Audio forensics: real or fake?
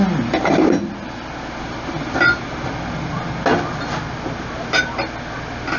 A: real